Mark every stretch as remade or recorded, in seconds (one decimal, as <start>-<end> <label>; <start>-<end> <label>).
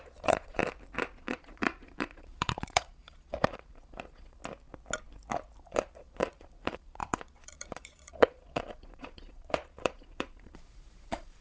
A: 0.0-0.6 remade; 0.6-1.2 recorded; 1.2-4.4 remade; 4.4-5.6 recorded; 5.6-11.4 remade